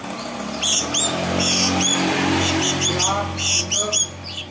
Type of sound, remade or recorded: recorded